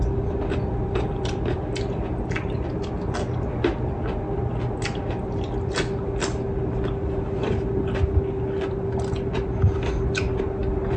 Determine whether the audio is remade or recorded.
recorded